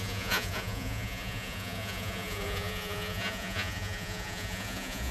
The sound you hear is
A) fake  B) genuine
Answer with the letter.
A